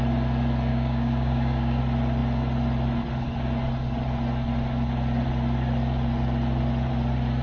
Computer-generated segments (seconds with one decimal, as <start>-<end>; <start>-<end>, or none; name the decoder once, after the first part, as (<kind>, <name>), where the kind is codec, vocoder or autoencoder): 0.7-1.8 (codec, DAC)